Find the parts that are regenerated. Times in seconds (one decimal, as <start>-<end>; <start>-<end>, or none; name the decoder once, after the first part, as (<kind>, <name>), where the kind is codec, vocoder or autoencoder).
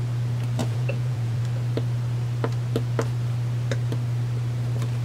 0.6-1.4 (vocoder, Vocos)